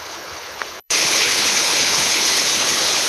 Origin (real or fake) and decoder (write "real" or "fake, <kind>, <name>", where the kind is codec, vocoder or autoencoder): fake, codec, HILCodec